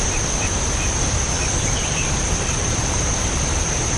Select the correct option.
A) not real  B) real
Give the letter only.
B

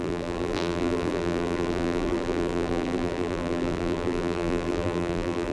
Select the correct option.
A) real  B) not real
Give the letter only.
B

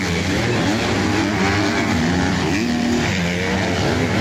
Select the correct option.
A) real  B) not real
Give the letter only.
A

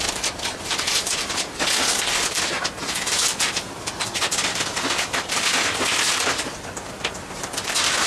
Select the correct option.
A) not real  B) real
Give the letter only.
B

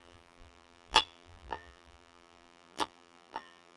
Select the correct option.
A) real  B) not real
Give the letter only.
B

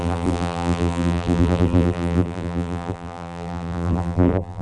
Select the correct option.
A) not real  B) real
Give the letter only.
A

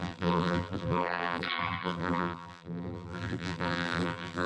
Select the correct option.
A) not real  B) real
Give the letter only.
A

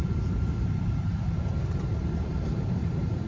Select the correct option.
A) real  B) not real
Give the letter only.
B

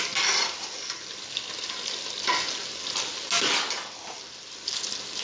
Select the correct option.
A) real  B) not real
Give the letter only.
A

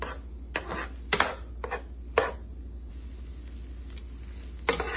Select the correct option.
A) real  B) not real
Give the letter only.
A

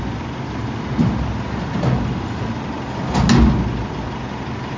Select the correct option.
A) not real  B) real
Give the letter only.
B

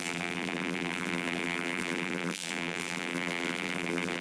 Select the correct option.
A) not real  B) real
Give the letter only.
A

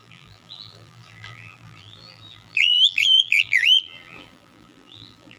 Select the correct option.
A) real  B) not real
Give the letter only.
B